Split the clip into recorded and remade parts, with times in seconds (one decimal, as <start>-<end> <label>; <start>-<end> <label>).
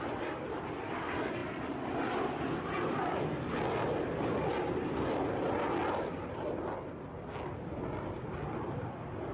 0.0-9.3 recorded